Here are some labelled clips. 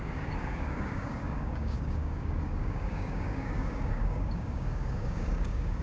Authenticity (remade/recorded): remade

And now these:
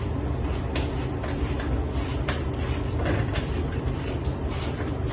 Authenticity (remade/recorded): remade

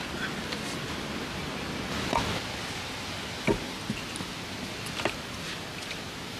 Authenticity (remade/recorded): recorded